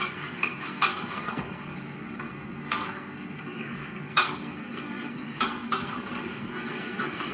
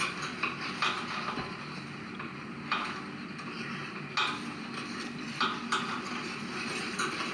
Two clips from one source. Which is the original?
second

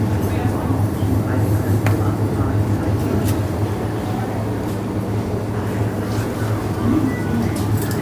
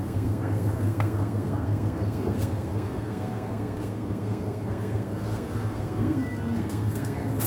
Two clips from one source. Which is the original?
first